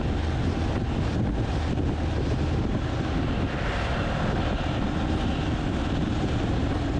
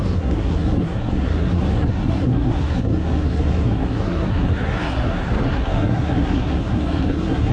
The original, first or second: first